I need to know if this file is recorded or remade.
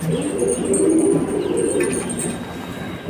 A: recorded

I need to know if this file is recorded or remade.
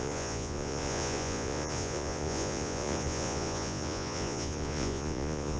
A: remade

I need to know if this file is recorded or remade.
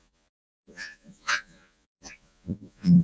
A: remade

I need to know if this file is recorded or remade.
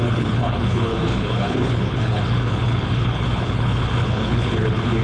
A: remade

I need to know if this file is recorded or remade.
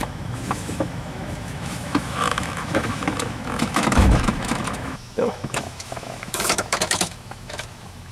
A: remade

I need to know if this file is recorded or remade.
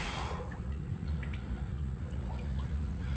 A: remade